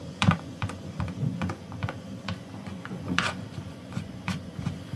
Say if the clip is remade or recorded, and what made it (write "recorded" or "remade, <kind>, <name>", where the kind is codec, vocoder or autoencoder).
remade, vocoder, Vocos